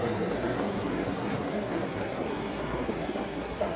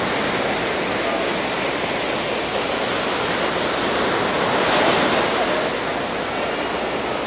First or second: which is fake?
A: first